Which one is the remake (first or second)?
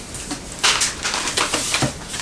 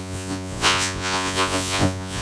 second